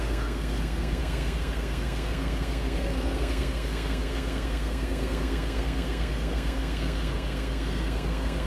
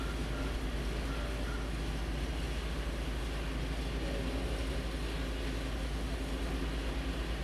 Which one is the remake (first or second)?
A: first